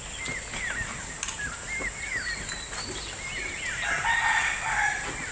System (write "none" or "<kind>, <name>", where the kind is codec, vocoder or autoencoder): none